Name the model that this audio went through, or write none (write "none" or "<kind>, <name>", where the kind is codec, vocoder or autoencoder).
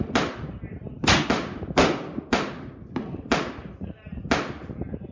none